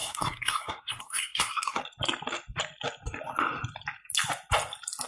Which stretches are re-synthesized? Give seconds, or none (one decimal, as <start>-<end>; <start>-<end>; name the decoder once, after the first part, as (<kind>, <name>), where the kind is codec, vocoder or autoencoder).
0.0-1.8 (codec, SNAC)